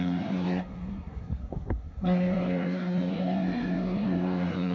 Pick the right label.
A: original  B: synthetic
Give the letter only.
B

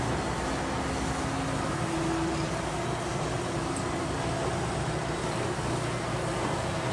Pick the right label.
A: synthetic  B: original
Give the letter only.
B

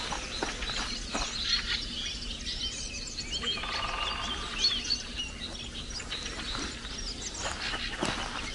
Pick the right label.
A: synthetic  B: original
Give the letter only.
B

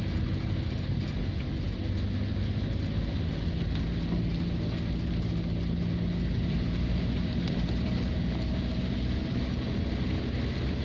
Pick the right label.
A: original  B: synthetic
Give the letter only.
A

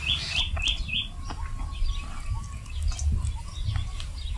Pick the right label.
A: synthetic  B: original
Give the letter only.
B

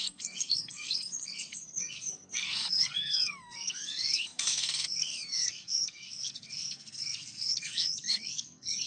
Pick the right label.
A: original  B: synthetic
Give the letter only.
B